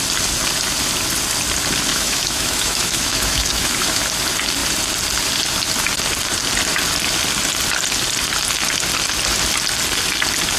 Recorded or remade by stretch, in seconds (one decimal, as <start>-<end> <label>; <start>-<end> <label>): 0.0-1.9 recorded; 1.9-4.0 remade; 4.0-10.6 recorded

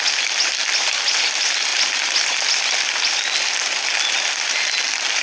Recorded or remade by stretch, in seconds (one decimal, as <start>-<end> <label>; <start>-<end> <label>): 0.0-5.2 recorded

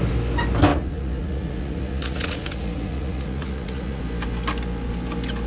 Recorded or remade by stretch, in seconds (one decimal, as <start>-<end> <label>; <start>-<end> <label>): 0.0-0.7 recorded; 0.7-4.0 remade; 4.0-5.5 recorded

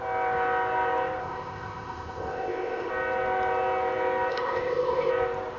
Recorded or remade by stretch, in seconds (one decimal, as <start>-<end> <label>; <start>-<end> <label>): 0.0-1.2 recorded; 1.2-2.9 remade; 2.9-4.3 recorded; 4.3-5.1 remade; 5.1-5.6 recorded